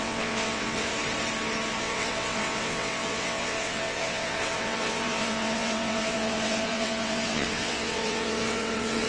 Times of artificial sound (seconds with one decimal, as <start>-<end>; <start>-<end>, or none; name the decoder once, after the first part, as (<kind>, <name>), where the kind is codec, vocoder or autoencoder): 0.0-0.9 (vocoder, WaveNeXt); 1.8-9.1